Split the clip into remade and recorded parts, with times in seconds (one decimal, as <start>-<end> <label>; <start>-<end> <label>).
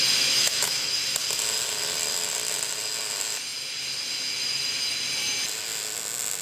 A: 0.0-0.4 recorded; 0.4-0.9 remade; 0.9-6.4 recorded